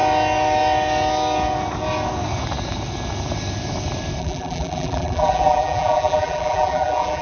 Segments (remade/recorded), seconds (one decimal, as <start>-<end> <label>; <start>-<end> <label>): 0.0-4.2 recorded; 4.2-7.2 remade

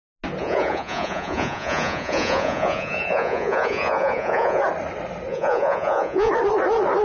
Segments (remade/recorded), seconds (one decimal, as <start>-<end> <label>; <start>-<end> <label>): 0.0-0.4 recorded; 0.4-4.6 remade; 4.6-5.3 recorded; 5.3-6.3 remade; 6.3-7.0 recorded

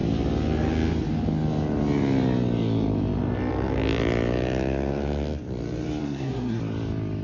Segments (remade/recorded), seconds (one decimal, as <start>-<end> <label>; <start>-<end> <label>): 0.0-6.0 recorded; 6.0-6.6 remade; 6.6-7.2 recorded

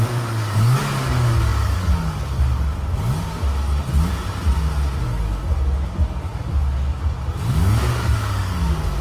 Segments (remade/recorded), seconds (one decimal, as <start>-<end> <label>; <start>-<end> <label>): 0.0-3.4 remade; 3.4-5.0 recorded; 5.0-9.0 remade